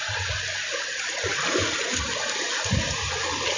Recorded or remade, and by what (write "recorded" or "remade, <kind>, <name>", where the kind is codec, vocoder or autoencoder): recorded